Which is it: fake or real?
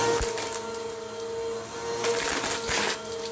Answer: real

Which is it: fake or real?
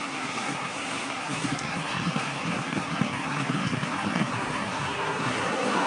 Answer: fake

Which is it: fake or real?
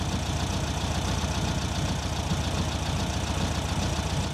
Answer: real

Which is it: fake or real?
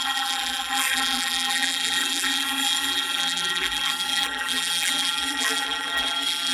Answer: fake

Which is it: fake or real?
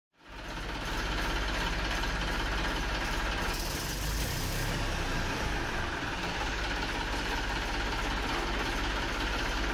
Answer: real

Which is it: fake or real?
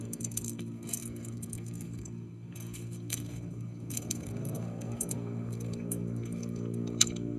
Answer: fake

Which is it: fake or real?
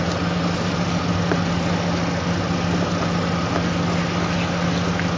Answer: real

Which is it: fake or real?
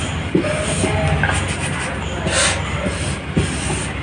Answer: real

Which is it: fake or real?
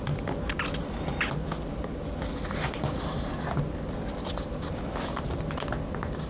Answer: real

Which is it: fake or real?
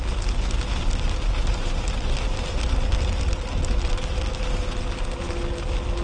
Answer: real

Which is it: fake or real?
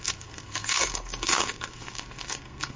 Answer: fake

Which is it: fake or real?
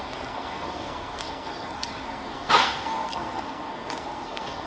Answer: fake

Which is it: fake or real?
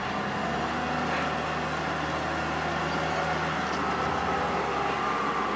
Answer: real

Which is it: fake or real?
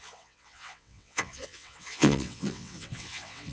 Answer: fake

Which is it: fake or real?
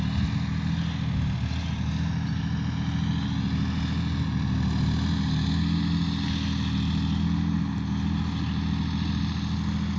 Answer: real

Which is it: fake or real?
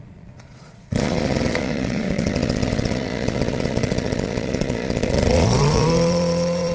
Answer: fake